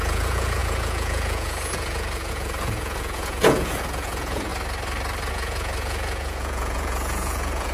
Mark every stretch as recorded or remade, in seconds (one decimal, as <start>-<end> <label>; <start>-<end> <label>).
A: 0.0-4.5 remade; 4.5-5.3 recorded; 5.3-7.7 remade